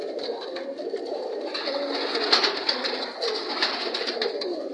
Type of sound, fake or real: real